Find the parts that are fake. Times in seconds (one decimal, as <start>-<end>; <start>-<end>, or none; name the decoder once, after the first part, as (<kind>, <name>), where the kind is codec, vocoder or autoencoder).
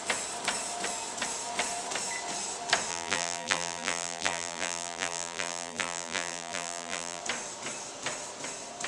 2.9-7.2 (vocoder, BigVGAN v2)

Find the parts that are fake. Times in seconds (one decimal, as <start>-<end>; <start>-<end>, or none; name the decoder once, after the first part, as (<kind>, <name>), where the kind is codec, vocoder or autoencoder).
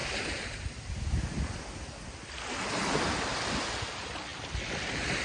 0.0-0.6 (vocoder, BigVGAN v2)